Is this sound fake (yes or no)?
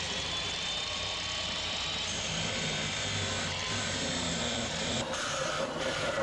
yes